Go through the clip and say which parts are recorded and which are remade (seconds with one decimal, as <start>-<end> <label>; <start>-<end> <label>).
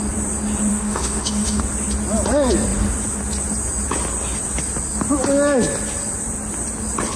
0.0-0.7 recorded; 0.7-1.6 remade; 1.6-7.2 recorded